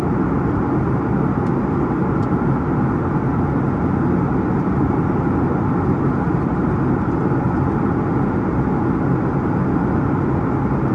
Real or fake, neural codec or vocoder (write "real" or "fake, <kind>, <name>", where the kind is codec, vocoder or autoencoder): real